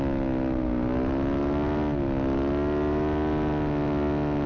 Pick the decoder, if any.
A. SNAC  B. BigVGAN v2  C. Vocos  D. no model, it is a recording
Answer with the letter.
D